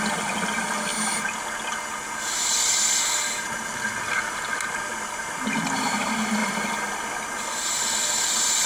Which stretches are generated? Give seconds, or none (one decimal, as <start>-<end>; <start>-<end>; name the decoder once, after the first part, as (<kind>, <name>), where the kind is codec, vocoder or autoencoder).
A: none